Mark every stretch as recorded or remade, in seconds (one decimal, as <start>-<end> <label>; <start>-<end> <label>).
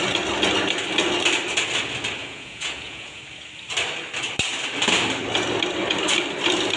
0.0-2.2 recorded; 2.2-3.2 remade; 3.2-6.8 recorded